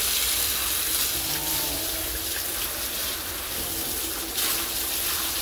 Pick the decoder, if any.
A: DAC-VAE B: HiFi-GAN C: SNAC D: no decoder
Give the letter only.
D